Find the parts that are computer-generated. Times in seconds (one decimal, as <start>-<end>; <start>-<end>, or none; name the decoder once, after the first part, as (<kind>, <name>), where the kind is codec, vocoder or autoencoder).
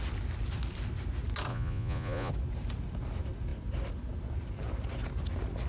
1.5-2.3 (vocoder, Vocos)